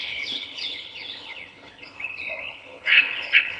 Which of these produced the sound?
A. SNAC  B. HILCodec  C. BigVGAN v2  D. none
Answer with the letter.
B